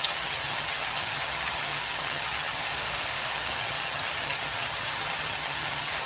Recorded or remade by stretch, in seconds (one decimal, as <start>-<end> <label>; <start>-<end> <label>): 0.0-2.7 remade; 2.7-3.3 recorded; 3.3-6.1 remade